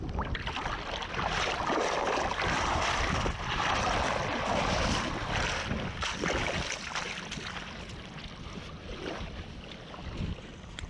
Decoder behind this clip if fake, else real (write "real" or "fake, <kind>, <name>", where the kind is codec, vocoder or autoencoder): real